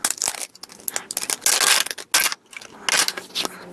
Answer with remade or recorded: recorded